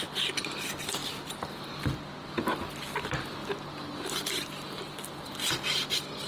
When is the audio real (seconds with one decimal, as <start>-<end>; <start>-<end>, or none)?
0.0-6.3